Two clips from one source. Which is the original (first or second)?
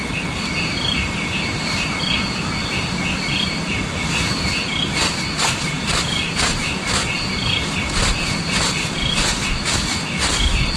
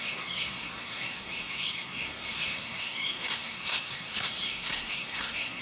first